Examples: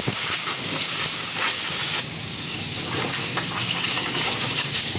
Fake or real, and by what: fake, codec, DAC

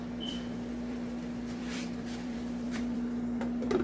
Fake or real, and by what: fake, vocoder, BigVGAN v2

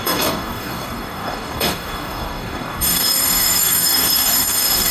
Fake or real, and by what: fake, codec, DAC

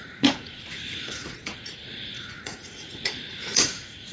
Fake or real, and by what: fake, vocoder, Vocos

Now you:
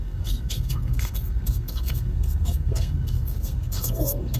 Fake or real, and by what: fake, codec, SNAC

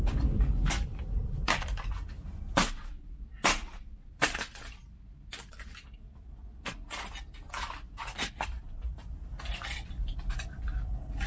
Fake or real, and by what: fake, vocoder, BigVGAN v2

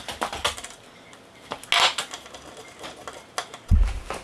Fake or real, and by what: real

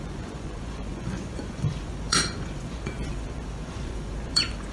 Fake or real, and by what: fake, vocoder, Vocos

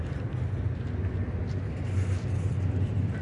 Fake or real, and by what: real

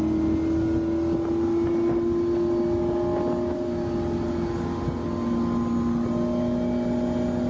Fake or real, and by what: real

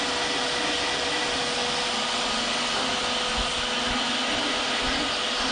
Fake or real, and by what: real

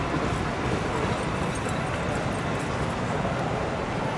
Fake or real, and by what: real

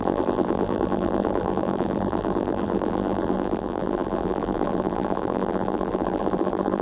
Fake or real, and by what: fake, vocoder, BigVGAN v2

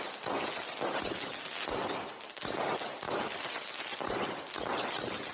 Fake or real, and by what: real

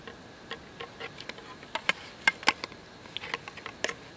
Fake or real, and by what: real